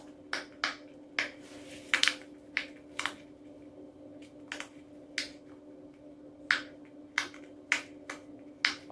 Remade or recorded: recorded